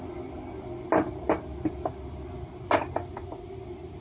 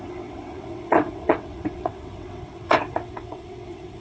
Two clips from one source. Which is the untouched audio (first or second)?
first